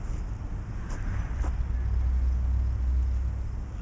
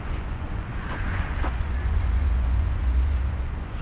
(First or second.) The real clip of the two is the first